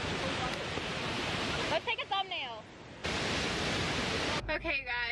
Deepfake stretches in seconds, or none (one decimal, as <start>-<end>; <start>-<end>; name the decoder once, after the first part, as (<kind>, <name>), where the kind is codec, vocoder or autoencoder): 0.9-2.0 (vocoder, BigVGAN v2); 3.0-5.1